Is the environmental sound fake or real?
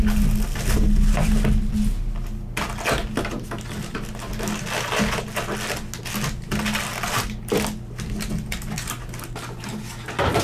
real